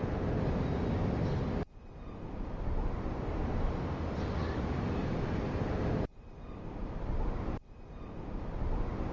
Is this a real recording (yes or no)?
yes